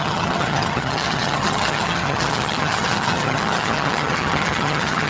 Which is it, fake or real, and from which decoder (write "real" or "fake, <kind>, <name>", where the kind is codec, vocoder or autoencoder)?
fake, vocoder, HiFi-GAN